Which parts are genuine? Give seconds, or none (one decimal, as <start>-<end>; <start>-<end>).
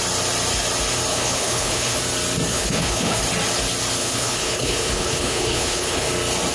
0.0-1.1; 2.0-2.5; 3.2-4.0; 6.1-6.5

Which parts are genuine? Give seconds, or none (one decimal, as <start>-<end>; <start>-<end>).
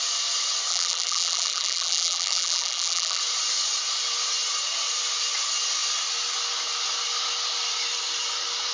0.0-0.7; 3.2-8.7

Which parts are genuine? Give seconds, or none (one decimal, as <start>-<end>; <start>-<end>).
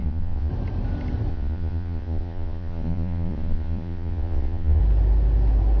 0.5-1.3; 4.8-5.8